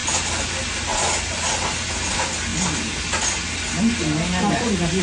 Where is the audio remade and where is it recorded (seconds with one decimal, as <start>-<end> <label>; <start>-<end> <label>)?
0.0-5.0 recorded